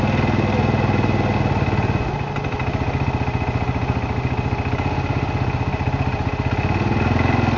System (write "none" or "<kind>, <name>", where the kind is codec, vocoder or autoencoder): none